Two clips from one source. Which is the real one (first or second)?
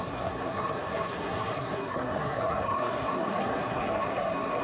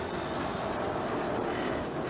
second